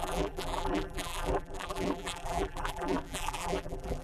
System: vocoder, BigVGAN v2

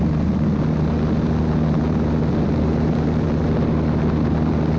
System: none